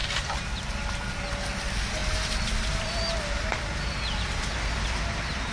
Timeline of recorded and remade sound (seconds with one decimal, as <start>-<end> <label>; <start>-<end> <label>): 0.0-5.5 recorded